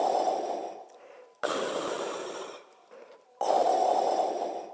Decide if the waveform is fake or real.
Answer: real